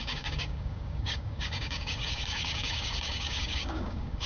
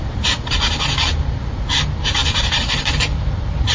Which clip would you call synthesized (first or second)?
first